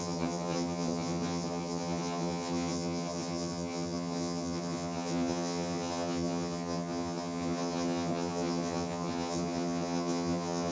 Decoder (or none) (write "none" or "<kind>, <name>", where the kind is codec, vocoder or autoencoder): vocoder, HiFi-GAN